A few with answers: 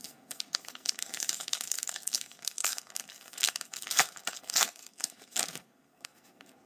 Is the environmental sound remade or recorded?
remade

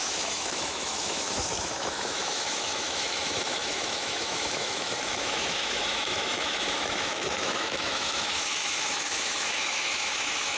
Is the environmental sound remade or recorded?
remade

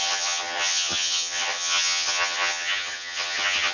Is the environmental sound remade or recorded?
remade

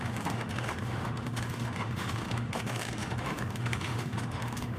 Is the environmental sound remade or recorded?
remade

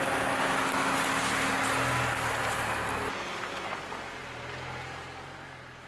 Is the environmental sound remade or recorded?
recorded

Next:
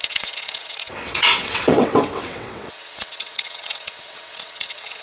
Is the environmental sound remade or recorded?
remade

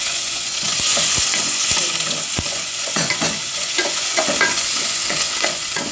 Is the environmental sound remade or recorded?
remade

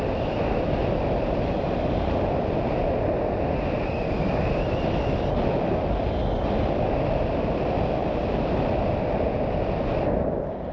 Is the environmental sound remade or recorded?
recorded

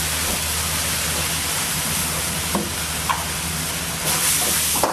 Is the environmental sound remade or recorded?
recorded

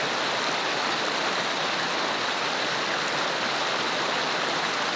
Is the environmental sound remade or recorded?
recorded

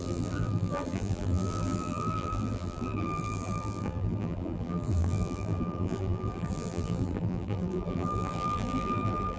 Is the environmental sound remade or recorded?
remade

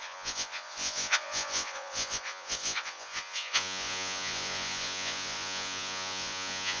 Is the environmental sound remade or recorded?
remade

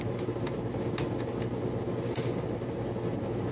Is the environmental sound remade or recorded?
recorded